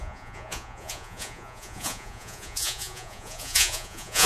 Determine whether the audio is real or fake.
fake